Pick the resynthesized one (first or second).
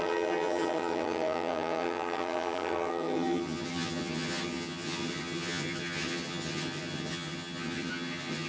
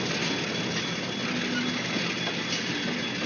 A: first